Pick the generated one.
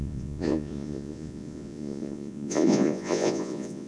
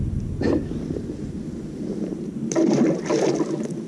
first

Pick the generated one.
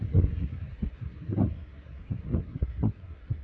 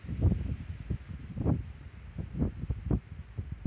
first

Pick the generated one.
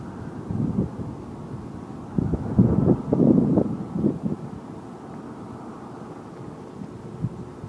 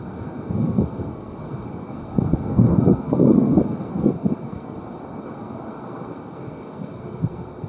second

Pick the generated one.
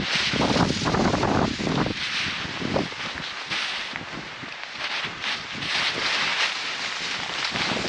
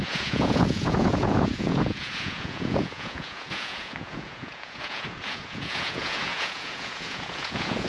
second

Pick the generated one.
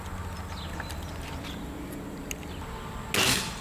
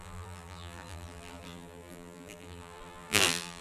second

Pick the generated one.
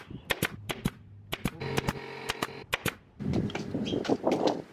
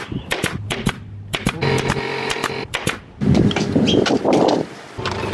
second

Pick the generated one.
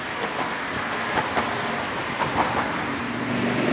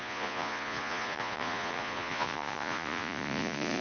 second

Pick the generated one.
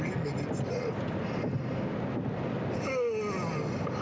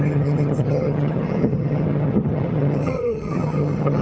second